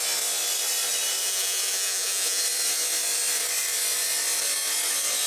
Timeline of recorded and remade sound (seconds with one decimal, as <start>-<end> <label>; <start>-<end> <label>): 0.0-1.2 recorded; 1.2-2.4 remade; 2.4-5.3 recorded